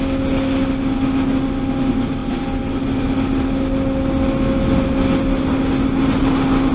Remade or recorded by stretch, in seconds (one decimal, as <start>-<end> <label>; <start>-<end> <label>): 0.0-6.7 recorded